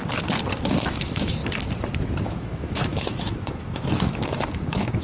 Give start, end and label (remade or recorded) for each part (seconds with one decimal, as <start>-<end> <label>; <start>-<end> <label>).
0.0-0.7 recorded; 0.7-1.4 remade; 1.4-2.2 recorded; 2.2-5.0 remade